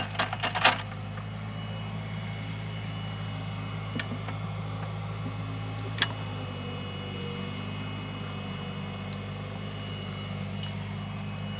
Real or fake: real